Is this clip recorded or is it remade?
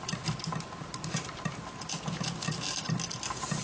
recorded